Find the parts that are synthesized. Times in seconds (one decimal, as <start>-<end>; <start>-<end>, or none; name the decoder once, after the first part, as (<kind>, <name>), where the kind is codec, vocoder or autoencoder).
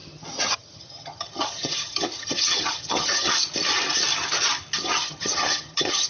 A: 0.0-3.3 (vocoder, HiFi-GAN); 4.8-6.1